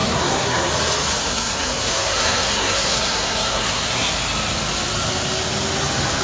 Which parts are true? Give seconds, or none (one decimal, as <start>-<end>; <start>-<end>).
0.7-1.2; 4.1-6.2